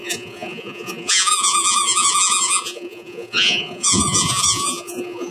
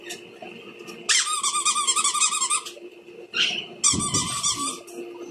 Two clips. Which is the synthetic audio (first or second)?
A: first